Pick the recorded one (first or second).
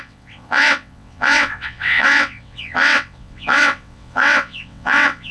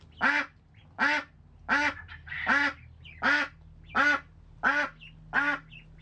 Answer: second